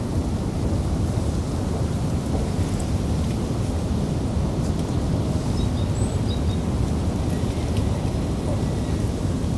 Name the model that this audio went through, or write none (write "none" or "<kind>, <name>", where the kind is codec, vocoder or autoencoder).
none